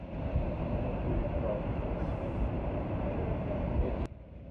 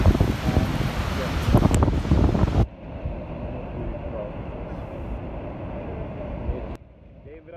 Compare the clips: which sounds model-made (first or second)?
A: first